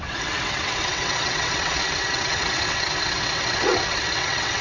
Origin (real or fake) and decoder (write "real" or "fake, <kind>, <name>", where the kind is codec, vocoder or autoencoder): fake, vocoder, WaveNeXt